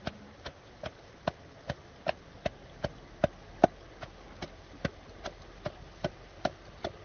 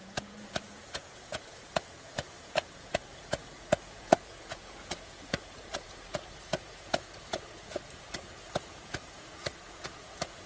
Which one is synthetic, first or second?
second